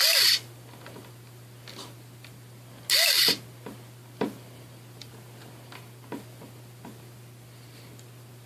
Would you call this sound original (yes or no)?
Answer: yes